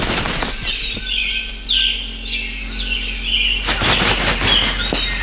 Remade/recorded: recorded